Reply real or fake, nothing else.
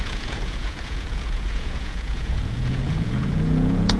fake